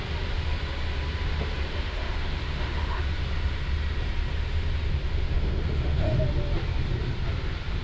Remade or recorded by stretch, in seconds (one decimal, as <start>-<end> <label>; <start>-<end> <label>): 0.0-1.7 recorded; 1.7-3.0 remade; 3.0-5.1 recorded; 5.1-6.2 remade; 6.2-7.8 recorded